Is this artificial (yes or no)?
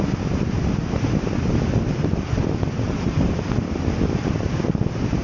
no